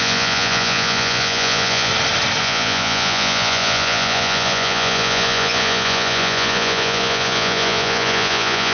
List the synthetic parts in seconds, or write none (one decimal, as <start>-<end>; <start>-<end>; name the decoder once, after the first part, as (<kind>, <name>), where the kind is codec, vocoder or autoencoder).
0.0-1.9 (vocoder, Vocos); 2.4-8.7